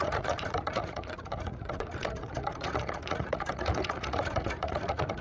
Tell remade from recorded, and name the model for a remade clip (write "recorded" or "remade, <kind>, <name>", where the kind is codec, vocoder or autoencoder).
remade, vocoder, Vocos